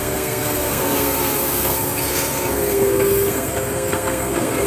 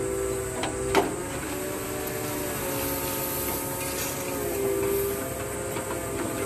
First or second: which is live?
second